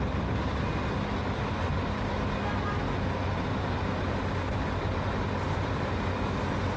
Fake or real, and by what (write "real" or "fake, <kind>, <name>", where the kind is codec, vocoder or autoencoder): real